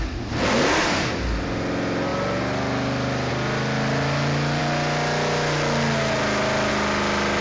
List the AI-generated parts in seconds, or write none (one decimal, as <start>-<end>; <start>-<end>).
none